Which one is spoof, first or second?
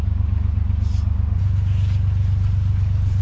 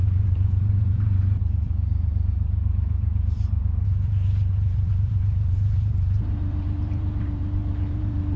second